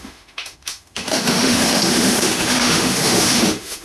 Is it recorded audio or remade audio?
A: remade